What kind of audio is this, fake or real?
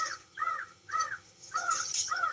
fake